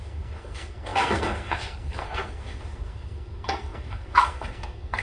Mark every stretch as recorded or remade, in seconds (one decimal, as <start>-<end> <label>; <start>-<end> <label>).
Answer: 0.0-5.0 remade